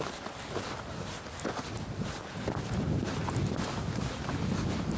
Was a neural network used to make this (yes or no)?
no